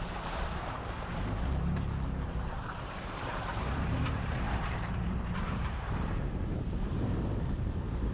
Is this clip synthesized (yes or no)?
yes